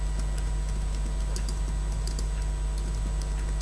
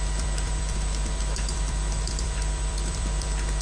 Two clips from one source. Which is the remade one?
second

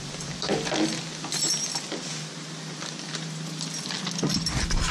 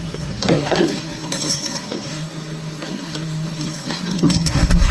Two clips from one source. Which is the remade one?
second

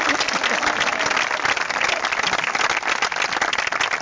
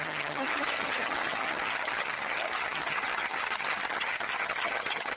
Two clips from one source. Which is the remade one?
second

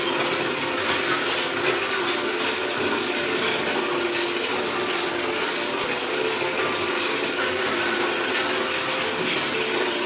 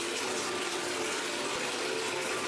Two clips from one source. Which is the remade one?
second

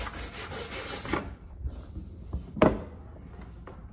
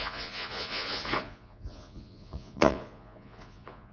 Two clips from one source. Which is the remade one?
second